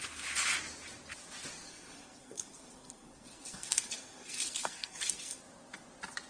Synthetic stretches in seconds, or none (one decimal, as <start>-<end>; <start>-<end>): 1.7-5.4